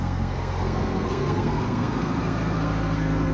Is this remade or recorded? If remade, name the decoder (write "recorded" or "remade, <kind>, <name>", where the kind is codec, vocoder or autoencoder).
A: remade, codec, SNAC